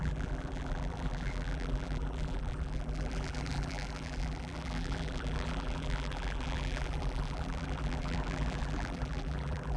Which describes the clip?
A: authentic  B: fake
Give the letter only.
B